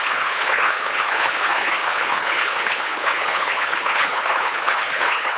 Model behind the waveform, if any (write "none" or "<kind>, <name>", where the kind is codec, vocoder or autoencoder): codec, HILCodec